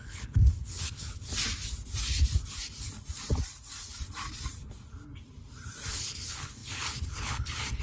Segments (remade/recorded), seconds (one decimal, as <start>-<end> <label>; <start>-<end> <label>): 0.0-1.3 remade; 1.3-5.9 recorded; 5.9-7.8 remade